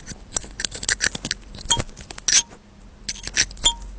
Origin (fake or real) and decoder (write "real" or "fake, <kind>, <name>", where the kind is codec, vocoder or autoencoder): real